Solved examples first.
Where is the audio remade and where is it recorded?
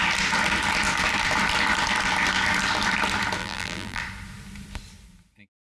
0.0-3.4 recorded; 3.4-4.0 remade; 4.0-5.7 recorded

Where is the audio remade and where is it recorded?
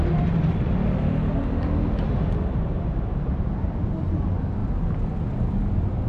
0.0-2.7 recorded; 2.7-3.8 remade; 3.8-6.1 recorded